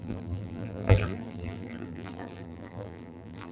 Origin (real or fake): fake